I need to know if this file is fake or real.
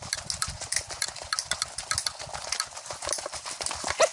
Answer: real